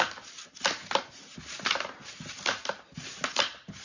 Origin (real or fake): real